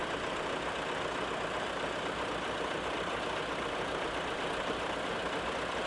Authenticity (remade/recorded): recorded